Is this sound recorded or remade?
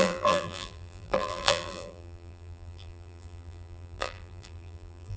remade